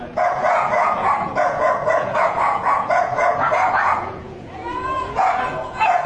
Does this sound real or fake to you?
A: fake